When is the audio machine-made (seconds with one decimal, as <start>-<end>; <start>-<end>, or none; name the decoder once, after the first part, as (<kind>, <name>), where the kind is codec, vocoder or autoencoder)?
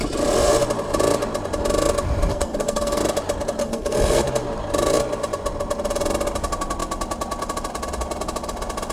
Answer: 2.3-3.0 (codec, SNAC); 3.6-4.3